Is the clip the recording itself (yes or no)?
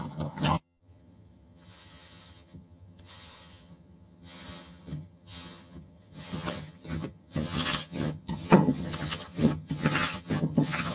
no